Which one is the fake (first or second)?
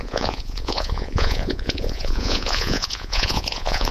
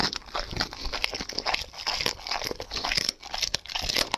first